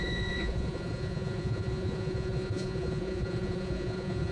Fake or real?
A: fake